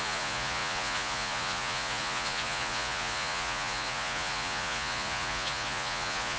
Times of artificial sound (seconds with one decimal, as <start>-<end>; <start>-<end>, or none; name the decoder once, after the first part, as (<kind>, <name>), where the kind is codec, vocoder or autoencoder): 0.0-6.4 (vocoder, Vocos)